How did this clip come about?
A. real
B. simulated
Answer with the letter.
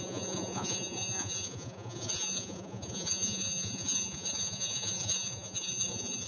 B